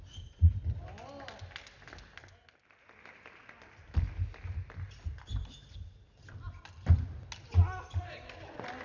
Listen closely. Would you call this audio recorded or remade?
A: recorded